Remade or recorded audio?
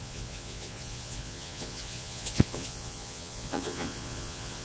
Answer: remade